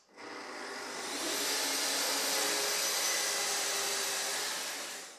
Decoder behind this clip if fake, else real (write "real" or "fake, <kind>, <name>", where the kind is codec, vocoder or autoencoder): real